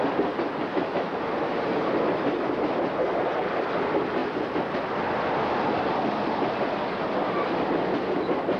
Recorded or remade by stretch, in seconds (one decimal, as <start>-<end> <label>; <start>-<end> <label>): 0.0-0.7 recorded; 0.7-1.5 remade; 1.5-8.6 recorded